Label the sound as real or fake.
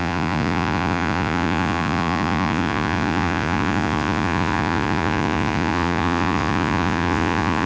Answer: fake